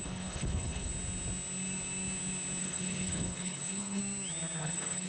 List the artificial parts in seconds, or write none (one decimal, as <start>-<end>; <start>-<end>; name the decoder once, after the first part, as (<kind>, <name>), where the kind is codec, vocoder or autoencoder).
0.0-0.9 (codec, HILCodec); 2.6-4.0; 4.6-5.1